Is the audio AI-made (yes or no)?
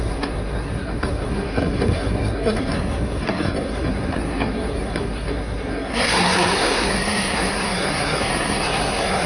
yes